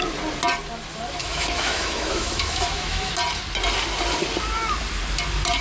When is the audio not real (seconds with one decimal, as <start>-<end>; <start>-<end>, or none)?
1.2-3.1